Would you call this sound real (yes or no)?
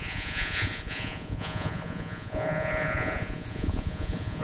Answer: no